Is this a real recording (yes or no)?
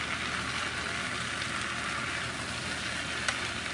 yes